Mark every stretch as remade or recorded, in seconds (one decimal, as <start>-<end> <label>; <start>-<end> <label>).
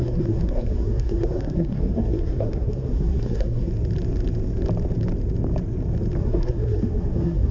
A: 0.0-3.7 remade; 3.7-6.2 recorded; 6.2-7.5 remade